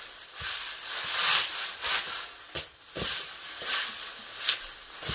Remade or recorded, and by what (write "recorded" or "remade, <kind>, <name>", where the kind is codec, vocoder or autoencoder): recorded